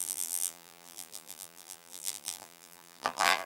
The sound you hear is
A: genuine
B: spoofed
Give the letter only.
B